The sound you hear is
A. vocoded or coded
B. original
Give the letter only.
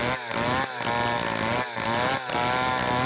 B